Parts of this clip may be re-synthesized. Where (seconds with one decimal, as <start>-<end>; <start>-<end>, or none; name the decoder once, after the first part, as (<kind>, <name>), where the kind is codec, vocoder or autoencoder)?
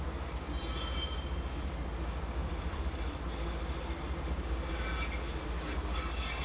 2.4-3.2 (vocoder, BigVGAN v2)